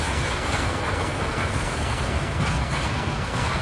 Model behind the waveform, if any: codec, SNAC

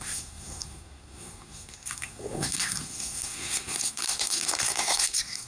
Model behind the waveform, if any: codec, SNAC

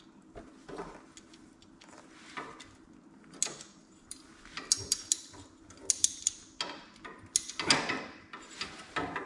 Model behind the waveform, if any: none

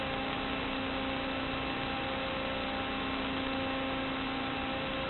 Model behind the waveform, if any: none